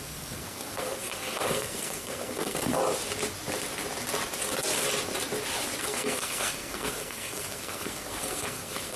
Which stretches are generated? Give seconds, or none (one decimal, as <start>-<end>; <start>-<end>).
0.0-2.8; 5.8-9.0